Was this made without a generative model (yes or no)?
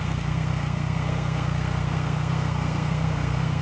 no